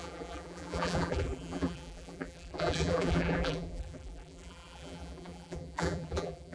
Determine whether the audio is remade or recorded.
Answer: remade